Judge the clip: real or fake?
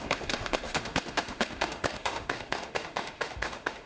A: fake